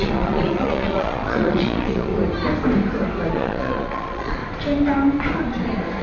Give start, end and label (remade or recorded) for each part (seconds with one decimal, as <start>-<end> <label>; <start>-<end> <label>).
0.0-2.1 remade; 2.1-3.3 recorded; 3.3-4.4 remade; 4.4-6.0 recorded